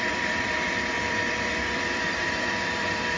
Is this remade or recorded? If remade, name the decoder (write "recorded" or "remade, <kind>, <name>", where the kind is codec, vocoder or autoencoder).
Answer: remade, vocoder, BigVGAN v2